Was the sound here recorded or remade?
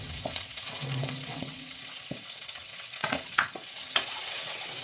remade